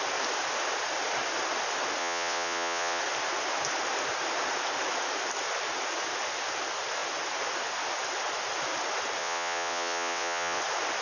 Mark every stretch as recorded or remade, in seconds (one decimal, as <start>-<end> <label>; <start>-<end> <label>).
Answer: 0.0-2.0 recorded; 2.0-3.0 remade; 3.0-9.2 recorded; 9.2-10.6 remade; 10.6-11.0 recorded